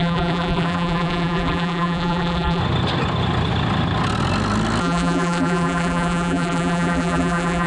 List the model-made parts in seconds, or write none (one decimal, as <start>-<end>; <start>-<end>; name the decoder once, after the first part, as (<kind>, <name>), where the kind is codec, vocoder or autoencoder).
0.0-2.6 (vocoder, BigVGAN v2); 4.8-7.7